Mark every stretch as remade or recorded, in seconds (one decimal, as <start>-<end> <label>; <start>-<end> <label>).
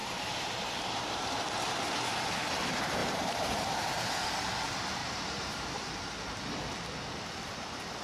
0.0-1.3 remade; 1.3-3.0 recorded; 3.0-4.0 remade; 4.0-5.0 recorded; 5.0-5.9 remade; 5.9-8.0 recorded